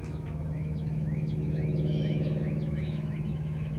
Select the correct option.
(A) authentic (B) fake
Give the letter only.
B